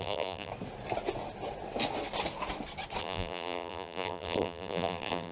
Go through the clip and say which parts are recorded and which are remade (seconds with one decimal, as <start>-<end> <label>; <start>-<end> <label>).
0.0-0.5 remade; 0.5-3.0 recorded; 3.0-5.3 remade